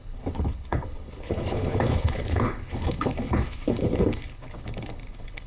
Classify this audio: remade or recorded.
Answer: remade